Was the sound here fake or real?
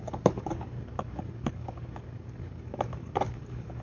fake